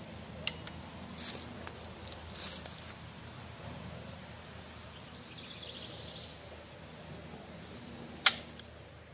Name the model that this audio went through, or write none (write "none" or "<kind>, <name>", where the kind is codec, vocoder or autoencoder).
none